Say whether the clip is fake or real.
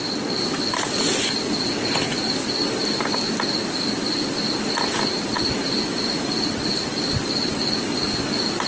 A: real